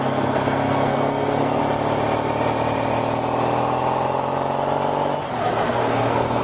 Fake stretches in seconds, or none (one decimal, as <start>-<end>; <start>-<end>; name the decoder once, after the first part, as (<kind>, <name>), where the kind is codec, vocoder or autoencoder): 0.0-1.6 (codec, SNAC); 5.4-6.4